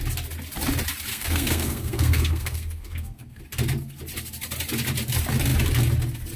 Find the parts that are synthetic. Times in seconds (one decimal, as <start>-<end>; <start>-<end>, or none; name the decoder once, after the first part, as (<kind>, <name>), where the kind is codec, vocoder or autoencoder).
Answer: 1.1-3.4 (codec, SNAC)